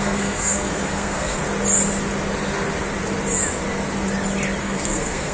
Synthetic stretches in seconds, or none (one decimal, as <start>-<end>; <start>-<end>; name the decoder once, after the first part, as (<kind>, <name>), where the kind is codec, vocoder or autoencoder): 0.0-1.4 (codec, SNAC); 4.6-5.3